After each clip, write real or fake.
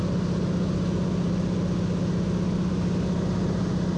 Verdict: real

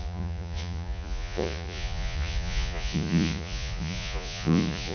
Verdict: fake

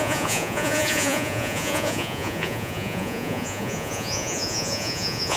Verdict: fake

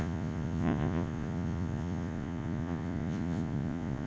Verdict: fake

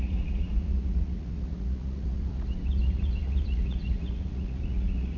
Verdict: fake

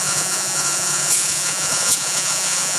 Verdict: fake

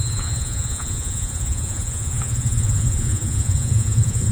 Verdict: fake